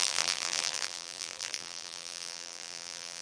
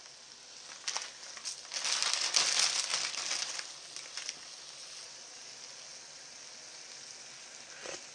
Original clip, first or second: second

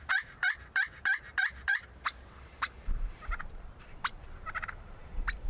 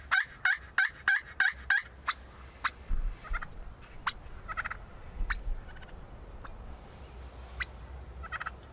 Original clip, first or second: second